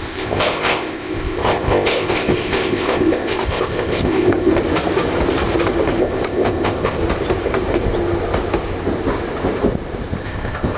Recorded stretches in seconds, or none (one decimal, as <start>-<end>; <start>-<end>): 4.5-6.0; 7.0-10.2